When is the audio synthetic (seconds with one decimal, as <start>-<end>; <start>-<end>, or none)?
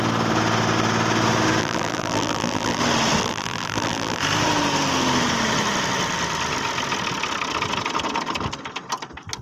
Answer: 1.6-2.8; 3.2-4.2